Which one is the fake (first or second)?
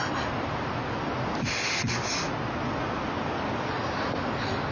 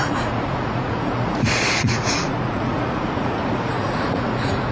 second